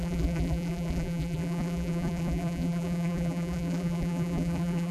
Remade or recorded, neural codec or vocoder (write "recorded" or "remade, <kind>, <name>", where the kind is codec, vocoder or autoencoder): remade, vocoder, BigVGAN v2